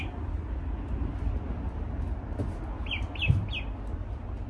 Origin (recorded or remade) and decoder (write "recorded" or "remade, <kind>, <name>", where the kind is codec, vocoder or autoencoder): recorded